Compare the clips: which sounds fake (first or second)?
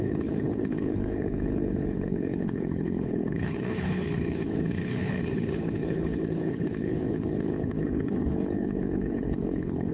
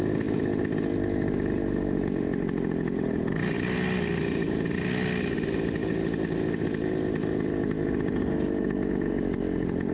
first